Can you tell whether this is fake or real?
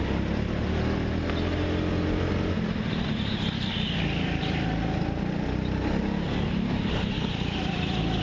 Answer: real